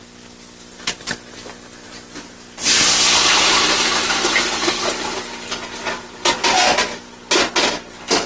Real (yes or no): yes